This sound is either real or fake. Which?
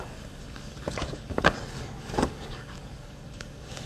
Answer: fake